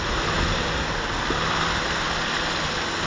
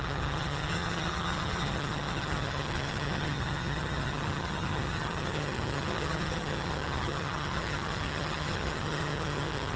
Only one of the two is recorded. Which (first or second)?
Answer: first